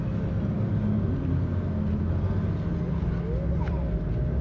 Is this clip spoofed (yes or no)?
no